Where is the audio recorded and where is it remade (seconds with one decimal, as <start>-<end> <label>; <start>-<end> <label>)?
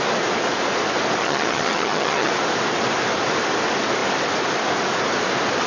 0.0-1.2 recorded; 1.2-2.3 remade; 2.3-5.7 recorded